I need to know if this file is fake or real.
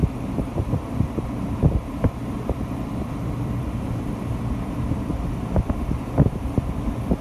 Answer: fake